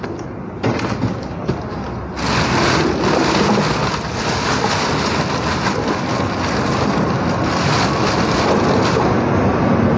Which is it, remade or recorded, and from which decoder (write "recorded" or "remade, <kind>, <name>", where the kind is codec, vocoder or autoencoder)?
recorded